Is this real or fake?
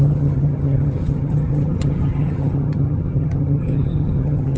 fake